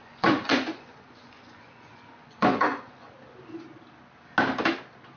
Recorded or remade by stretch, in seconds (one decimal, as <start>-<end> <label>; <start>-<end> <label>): 0.0-3.1 remade; 3.1-5.2 recorded

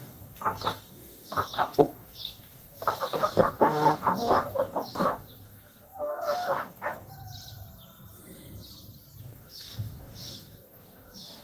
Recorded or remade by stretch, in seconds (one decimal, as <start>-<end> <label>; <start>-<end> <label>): 0.0-7.1 remade; 7.1-9.2 recorded; 9.2-11.4 remade

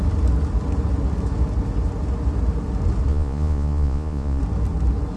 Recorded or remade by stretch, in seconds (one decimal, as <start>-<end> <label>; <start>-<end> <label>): 0.0-3.1 recorded; 3.1-4.4 remade; 4.4-5.2 recorded

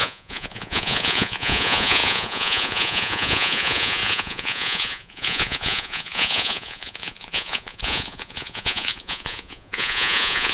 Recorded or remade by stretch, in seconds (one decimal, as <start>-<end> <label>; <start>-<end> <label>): 0.0-10.5 remade

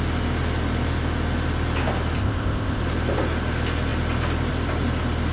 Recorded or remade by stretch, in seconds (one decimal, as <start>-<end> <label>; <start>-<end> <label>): 0.0-2.2 recorded; 2.2-2.8 remade; 2.8-5.3 recorded

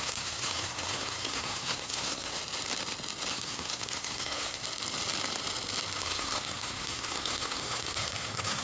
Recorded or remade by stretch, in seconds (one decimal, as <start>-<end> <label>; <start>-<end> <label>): 0.0-2.4 remade; 2.4-3.3 recorded; 3.3-4.6 remade; 4.6-6.0 recorded; 6.0-8.6 remade

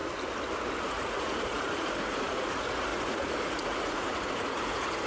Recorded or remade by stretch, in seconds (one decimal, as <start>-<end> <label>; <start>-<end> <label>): 0.0-0.8 recorded; 0.8-5.1 remade